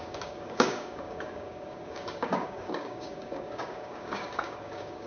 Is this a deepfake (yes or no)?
yes